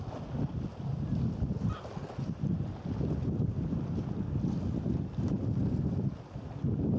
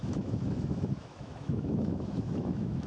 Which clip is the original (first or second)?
first